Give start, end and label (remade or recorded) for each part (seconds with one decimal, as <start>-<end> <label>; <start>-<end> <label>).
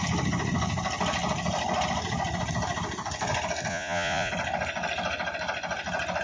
0.0-3.7 recorded; 3.7-4.3 remade; 4.3-6.2 recorded